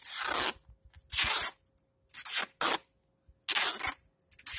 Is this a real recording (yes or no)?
yes